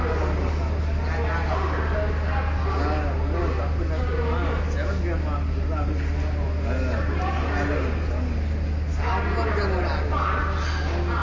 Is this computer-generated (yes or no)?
no